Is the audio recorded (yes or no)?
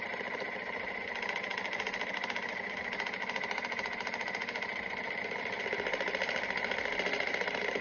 yes